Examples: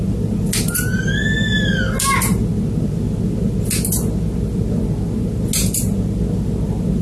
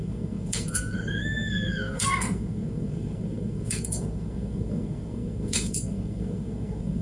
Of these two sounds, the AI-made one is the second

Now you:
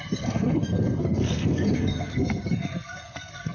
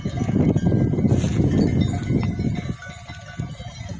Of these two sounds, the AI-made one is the first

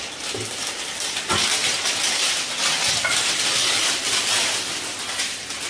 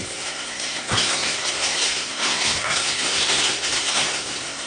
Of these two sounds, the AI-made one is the second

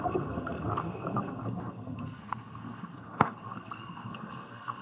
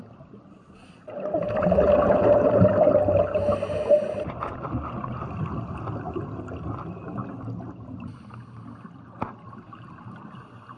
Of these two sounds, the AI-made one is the first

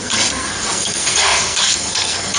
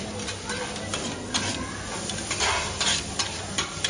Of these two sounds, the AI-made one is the first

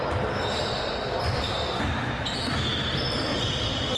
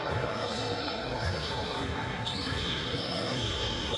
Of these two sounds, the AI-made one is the second